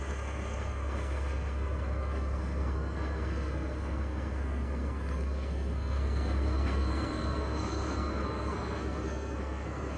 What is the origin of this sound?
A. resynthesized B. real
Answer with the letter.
A